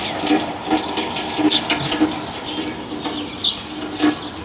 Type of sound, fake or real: real